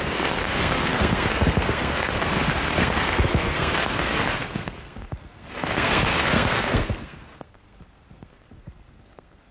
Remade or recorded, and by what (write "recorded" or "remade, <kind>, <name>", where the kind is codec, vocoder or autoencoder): remade, codec, SNAC